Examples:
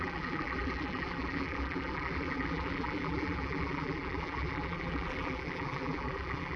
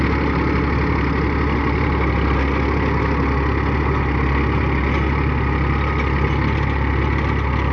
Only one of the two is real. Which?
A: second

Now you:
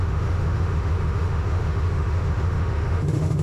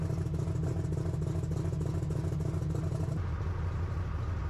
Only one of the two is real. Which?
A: second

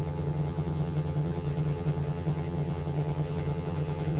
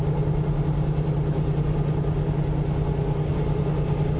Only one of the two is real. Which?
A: second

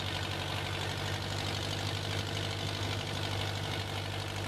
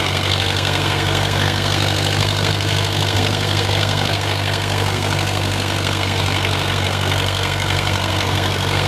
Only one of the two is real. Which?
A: first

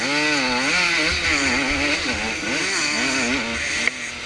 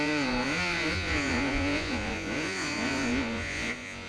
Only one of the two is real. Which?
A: first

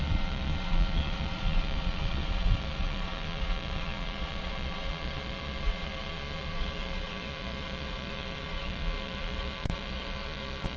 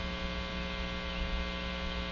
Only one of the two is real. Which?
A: second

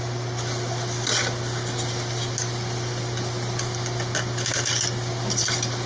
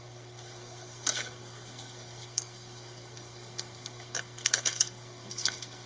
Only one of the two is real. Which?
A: first